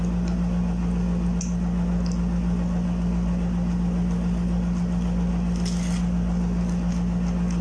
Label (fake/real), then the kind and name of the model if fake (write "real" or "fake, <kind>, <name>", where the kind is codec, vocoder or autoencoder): real